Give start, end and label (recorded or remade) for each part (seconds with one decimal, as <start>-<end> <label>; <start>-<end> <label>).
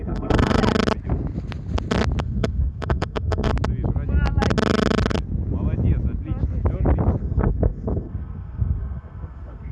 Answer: 0.0-0.6 remade; 0.6-2.2 recorded; 2.2-3.5 remade; 3.5-7.2 recorded; 7.2-9.7 remade